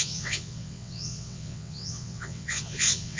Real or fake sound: fake